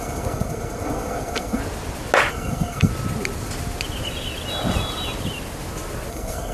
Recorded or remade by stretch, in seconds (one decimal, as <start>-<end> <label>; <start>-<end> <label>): 0.0-1.6 remade; 1.6-2.3 recorded; 2.3-2.9 remade; 2.9-6.1 recorded; 6.1-6.5 remade